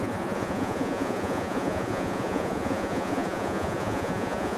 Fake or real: fake